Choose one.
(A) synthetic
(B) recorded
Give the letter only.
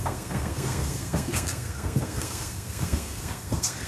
A